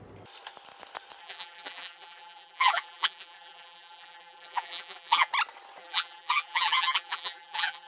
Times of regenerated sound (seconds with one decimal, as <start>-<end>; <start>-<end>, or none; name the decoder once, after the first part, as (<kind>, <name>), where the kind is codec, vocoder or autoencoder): 1.2-5.3 (vocoder, BigVGAN v2); 5.8-7.9